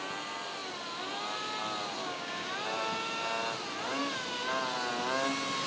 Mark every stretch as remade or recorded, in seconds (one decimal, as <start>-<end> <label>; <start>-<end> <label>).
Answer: 0.0-2.0 recorded; 2.0-2.5 remade; 2.5-5.7 recorded